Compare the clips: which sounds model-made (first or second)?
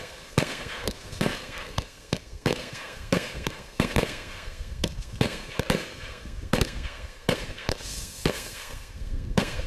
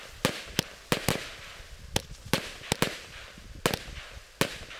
first